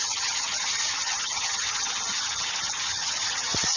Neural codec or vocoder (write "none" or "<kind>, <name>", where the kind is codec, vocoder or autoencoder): vocoder, HiFi-GAN